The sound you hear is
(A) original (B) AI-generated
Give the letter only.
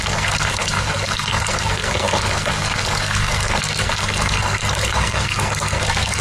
B